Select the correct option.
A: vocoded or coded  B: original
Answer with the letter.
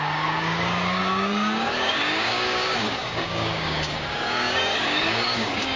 A